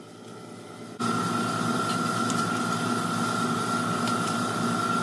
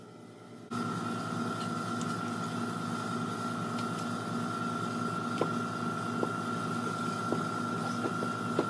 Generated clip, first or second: first